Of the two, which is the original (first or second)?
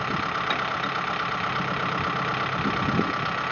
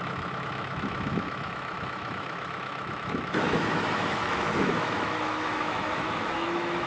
first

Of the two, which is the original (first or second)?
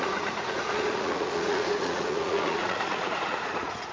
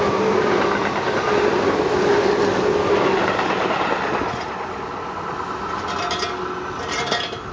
second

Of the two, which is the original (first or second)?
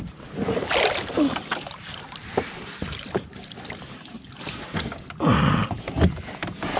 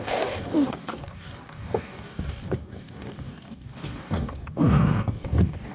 first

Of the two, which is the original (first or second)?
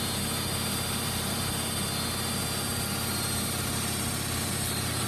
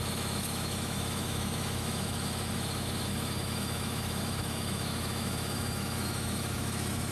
first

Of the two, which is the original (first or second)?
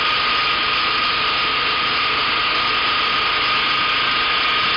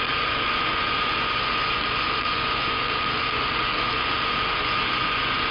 first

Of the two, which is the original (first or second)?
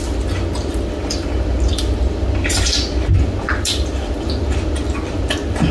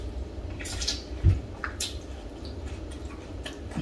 first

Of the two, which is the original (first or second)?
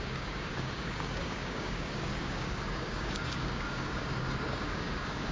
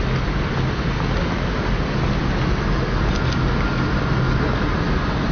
second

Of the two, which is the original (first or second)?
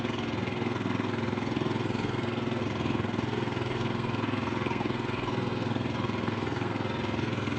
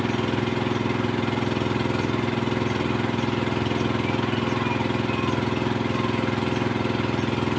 second